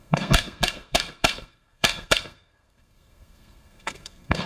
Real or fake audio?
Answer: fake